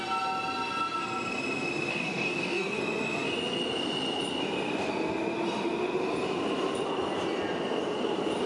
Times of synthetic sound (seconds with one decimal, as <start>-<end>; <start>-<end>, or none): 1.9-2.8